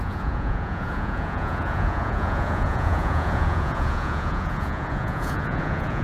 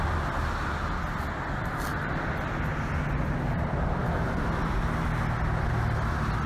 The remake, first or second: first